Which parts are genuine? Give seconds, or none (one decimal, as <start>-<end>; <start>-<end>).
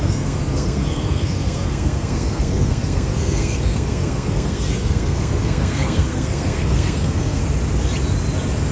7.4-8.7